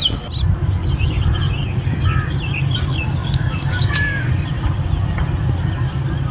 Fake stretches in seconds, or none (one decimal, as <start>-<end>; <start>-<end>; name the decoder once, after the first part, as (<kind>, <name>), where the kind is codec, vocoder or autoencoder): 3.2-4.3 (codec, DAC)